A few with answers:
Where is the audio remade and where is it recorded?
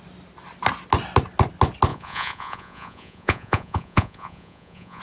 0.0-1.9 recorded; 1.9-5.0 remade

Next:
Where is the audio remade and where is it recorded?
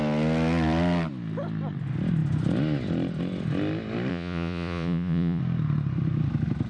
0.0-4.1 recorded; 4.1-5.4 remade; 5.4-6.7 recorded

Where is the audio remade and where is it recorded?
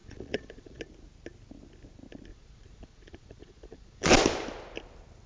0.0-0.8 remade; 0.8-2.3 recorded; 2.3-4.1 remade; 4.1-5.3 recorded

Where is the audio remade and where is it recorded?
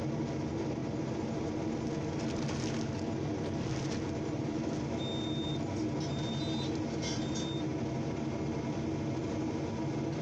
0.0-10.2 recorded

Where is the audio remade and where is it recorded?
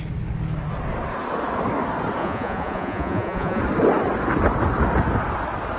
0.0-2.2 recorded; 2.2-3.6 remade; 3.6-5.8 recorded